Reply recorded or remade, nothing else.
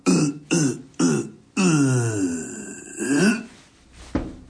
recorded